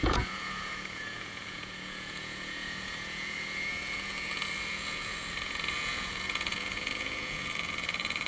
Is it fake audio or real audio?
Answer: fake